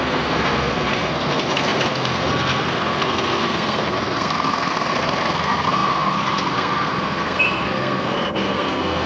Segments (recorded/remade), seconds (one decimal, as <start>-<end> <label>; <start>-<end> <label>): 0.0-9.1 remade